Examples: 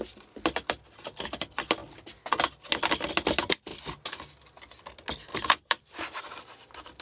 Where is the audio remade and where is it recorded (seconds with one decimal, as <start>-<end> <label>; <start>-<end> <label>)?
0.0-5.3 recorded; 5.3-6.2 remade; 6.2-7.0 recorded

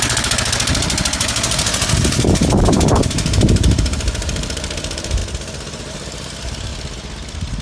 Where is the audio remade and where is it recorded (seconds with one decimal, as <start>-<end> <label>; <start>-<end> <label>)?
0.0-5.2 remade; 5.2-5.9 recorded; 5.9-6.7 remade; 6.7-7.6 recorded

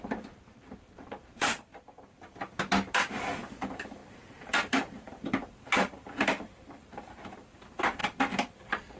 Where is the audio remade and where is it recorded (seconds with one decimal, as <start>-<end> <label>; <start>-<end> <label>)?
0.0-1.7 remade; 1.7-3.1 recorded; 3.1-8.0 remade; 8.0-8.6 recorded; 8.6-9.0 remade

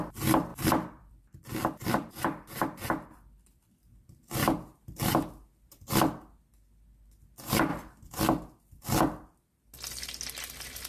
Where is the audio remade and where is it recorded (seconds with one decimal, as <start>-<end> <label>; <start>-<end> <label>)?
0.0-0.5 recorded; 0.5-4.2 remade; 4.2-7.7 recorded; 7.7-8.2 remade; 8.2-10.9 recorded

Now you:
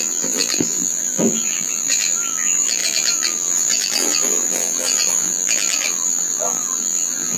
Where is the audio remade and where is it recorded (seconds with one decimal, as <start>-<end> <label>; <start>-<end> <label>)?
0.0-7.4 remade